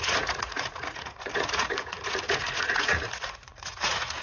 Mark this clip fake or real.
fake